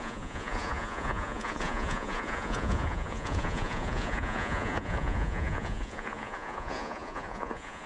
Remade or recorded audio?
remade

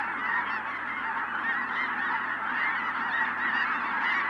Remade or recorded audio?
recorded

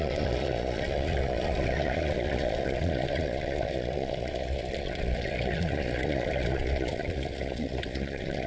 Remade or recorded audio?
remade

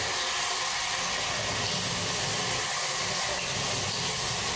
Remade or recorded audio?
recorded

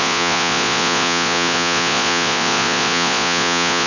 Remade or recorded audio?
remade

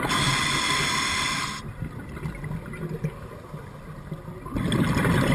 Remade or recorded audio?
recorded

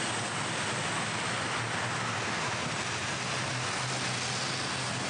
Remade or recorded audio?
recorded